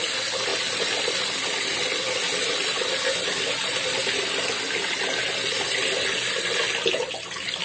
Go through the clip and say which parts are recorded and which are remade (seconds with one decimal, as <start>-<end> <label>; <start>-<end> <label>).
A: 0.0-7.6 recorded